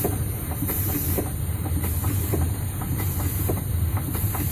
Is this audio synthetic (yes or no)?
no